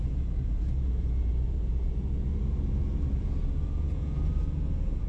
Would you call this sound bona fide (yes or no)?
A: no